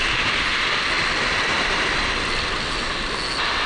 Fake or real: real